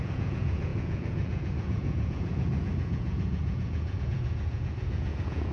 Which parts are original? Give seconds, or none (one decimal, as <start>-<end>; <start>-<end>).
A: none